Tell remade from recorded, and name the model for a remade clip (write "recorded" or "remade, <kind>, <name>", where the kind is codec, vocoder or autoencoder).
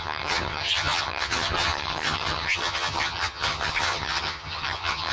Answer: remade, vocoder, HiFi-GAN